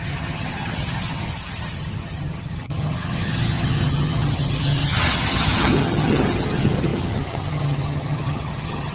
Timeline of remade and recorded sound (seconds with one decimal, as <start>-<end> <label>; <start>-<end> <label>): 0.0-8.9 remade